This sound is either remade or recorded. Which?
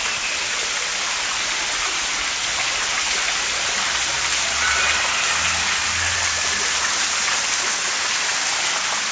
recorded